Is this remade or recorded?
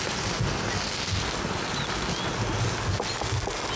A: recorded